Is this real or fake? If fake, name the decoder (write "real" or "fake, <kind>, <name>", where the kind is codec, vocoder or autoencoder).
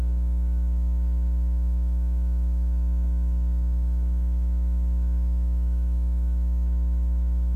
fake, autoencoder, DAC-VAE